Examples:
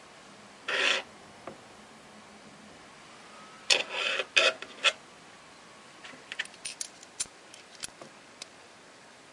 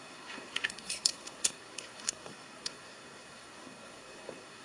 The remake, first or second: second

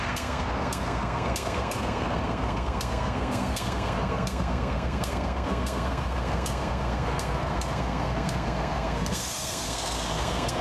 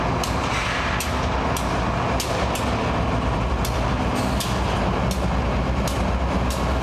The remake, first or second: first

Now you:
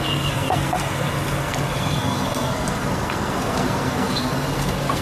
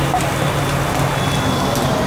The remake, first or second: first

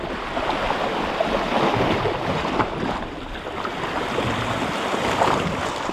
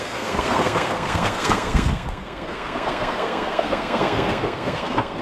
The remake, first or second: second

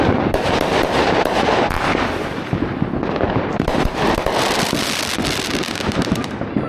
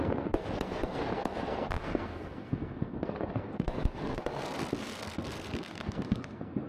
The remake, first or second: second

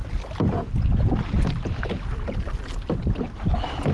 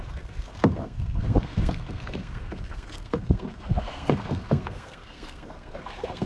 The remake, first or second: second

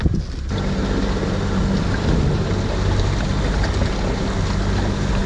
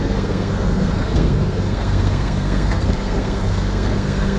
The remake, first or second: second